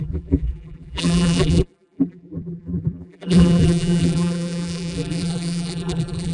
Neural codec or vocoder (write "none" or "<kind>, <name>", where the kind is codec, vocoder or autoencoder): vocoder, BigVGAN v2